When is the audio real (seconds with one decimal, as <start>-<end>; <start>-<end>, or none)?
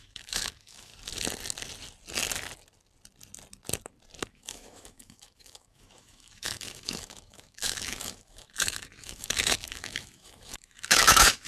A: 0.9-4.3